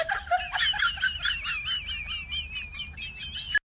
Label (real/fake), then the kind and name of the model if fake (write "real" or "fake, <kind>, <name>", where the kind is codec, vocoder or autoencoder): real